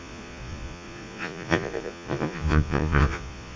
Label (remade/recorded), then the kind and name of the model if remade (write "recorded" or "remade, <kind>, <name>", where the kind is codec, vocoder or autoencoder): remade, vocoder, Vocos